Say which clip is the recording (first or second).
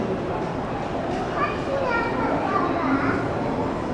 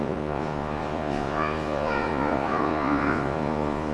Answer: first